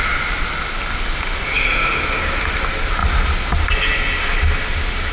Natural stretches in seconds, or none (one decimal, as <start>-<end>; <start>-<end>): 0.0-5.1